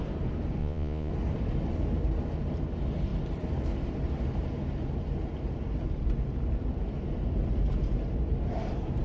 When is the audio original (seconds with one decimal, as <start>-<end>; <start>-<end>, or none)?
0.0-0.6; 1.1-9.0